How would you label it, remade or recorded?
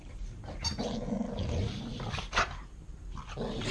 recorded